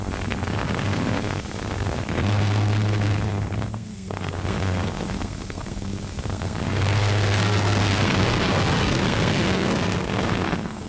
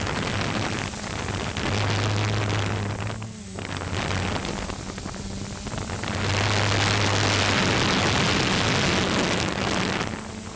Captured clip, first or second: second